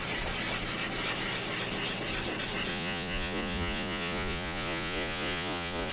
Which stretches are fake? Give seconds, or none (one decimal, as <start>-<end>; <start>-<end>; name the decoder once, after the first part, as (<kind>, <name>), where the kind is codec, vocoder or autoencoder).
2.7-5.9 (vocoder, Vocos)